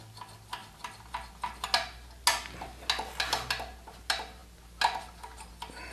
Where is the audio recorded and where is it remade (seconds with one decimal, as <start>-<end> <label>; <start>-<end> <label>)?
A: 0.0-5.9 recorded